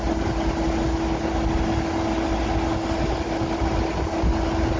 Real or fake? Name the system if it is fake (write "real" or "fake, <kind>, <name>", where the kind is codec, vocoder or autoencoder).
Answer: real